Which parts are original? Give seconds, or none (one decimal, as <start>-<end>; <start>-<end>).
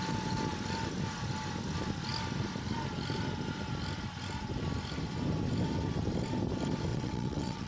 0.0-6.9